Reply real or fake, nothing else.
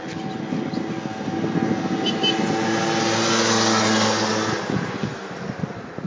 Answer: real